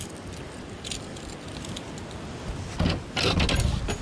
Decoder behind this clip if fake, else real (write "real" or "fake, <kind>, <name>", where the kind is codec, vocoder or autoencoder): real